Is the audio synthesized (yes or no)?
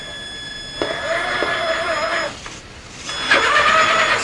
no